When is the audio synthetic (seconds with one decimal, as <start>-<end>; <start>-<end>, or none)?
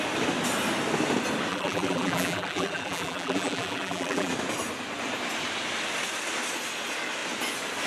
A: 1.5-4.3